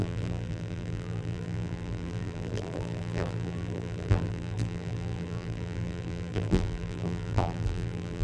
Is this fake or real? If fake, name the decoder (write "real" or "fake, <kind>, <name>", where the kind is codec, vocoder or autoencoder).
fake, vocoder, BigVGAN v2